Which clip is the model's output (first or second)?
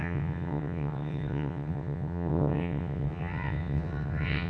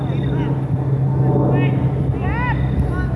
first